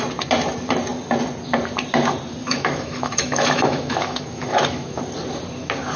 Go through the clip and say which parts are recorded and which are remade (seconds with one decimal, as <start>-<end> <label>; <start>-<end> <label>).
0.0-2.4 recorded; 2.4-5.0 remade; 5.0-6.0 recorded